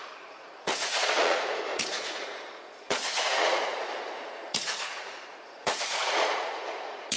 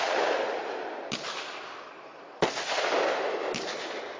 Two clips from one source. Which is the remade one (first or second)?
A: first